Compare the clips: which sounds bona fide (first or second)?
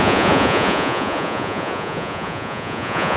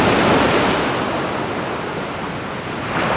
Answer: second